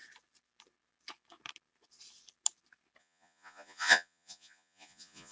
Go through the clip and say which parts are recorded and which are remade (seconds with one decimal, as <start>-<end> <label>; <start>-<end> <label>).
0.0-3.0 recorded; 3.0-5.3 remade